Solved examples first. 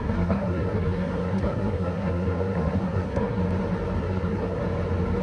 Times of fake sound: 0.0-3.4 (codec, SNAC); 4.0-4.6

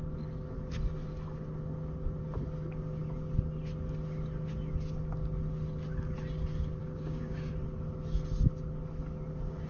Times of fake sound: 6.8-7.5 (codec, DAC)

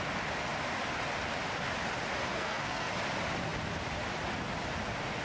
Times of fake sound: 2.3-2.9 (codec, SNAC)

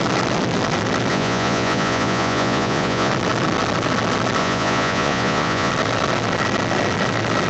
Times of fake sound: 1.1-3.1 (vocoder, Vocos); 4.4-5.7

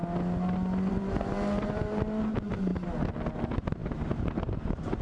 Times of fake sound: 0.9-2.7 (vocoder, BigVGAN v2); 3.3-5.0

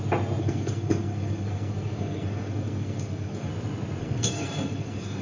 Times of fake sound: 0.4-3.5 (codec, SNAC); 4.0-5.2